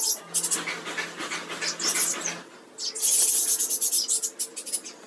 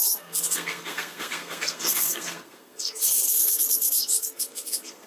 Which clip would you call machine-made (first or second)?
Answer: second